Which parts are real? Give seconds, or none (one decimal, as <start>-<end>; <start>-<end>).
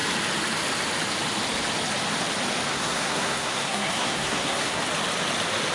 0.0-2.7; 4.8-5.7